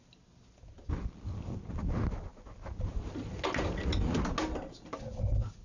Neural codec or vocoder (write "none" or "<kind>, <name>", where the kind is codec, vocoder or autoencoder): none